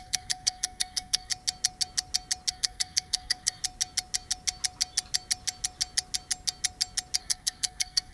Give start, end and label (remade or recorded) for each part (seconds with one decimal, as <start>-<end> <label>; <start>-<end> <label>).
0.0-1.3 remade; 1.3-2.5 recorded; 2.5-3.6 remade; 3.6-7.2 recorded; 7.2-8.1 remade